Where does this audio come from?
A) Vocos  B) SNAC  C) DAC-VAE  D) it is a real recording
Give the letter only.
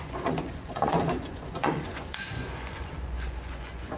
A